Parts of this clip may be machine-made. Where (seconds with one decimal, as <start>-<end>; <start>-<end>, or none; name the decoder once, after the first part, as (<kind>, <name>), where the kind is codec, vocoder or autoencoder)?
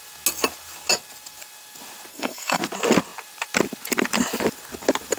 2.1-2.6 (codec, SNAC)